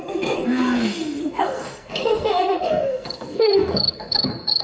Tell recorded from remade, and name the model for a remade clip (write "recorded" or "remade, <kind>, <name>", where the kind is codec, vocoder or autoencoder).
remade, codec, SNAC